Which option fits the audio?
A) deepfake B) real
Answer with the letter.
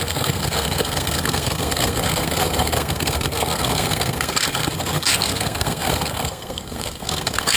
A